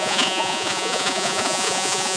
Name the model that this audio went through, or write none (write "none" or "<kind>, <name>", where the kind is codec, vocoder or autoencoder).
vocoder, Vocos